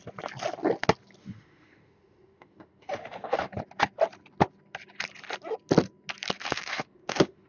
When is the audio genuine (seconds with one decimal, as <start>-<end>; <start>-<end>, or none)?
0.0-1.2; 3.5-6.4